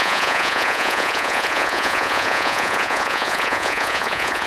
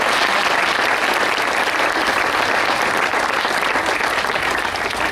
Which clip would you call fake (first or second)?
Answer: first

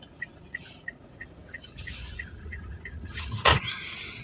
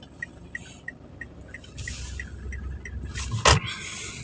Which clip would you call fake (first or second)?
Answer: first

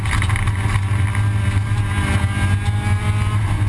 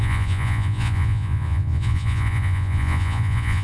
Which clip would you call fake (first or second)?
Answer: second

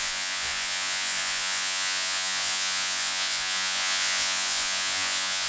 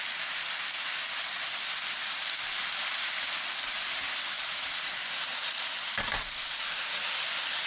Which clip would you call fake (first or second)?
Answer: first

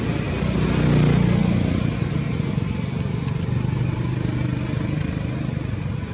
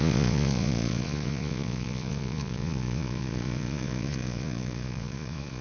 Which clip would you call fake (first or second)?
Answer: second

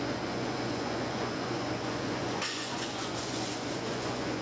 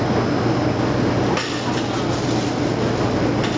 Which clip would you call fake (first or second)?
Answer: first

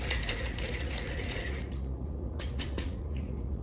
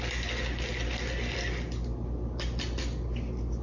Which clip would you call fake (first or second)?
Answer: first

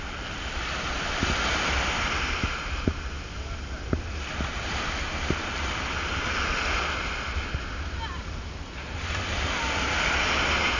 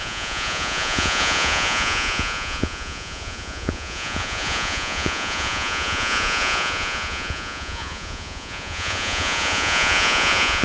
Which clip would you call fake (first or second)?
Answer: second